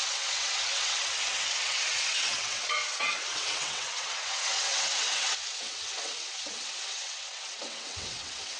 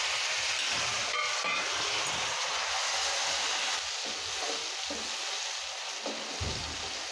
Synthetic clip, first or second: first